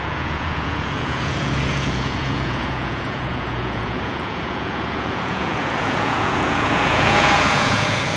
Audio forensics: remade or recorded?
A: remade